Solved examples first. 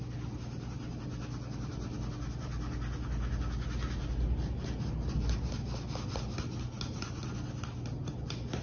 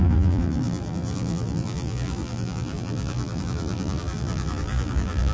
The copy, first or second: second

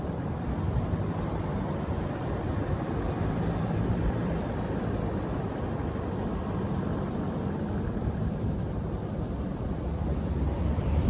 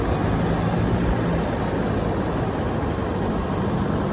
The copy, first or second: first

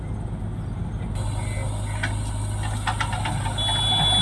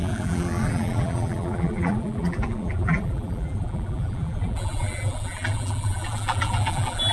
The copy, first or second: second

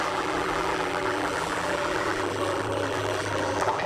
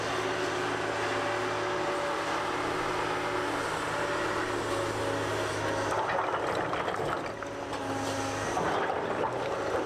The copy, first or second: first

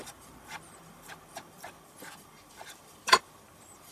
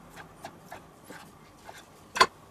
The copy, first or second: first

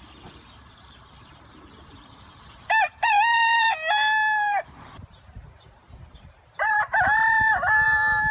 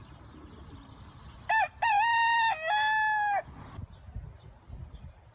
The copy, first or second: first